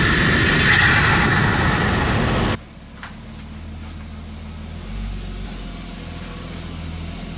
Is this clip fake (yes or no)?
no